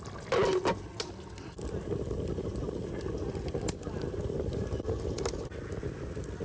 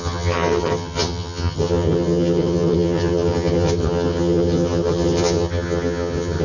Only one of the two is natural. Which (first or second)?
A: first